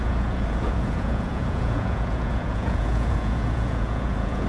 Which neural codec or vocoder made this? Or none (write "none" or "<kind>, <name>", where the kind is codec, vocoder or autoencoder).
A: vocoder, Vocos